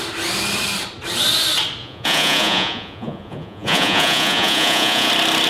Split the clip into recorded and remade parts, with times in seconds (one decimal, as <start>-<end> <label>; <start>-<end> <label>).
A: 0.0-1.8 recorded; 1.8-5.1 remade; 5.1-5.5 recorded